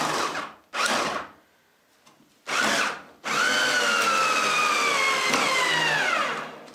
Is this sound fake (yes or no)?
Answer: no